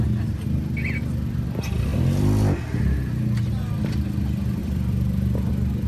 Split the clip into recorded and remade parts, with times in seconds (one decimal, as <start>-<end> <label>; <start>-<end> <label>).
0.0-1.9 recorded; 1.9-3.5 remade; 3.5-4.6 recorded; 4.6-5.5 remade; 5.5-5.9 recorded